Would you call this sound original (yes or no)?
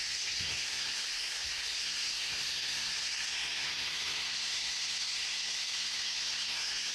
no